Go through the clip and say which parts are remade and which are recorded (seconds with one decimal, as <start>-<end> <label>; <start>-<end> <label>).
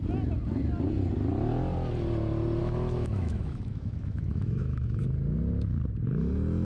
0.0-2.6 recorded; 2.6-5.0 remade; 5.0-6.6 recorded